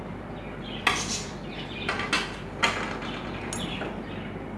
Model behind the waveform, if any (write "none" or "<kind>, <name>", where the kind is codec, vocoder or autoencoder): none